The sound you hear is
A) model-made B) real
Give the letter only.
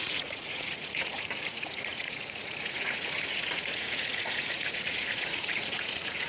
A